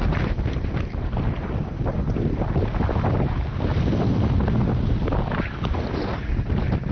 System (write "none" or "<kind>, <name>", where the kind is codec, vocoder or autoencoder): none